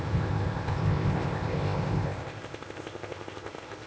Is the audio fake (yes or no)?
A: yes